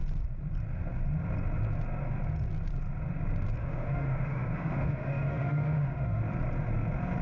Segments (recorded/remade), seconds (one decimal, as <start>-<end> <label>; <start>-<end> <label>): 0.0-3.6 recorded; 3.6-6.2 remade; 6.2-7.2 recorded